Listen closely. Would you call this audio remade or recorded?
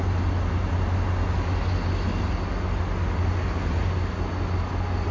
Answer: recorded